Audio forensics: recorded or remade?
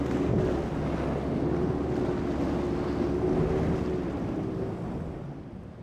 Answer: recorded